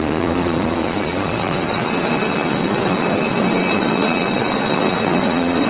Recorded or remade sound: remade